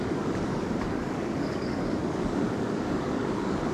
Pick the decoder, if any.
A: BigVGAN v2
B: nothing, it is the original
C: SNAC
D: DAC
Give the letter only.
D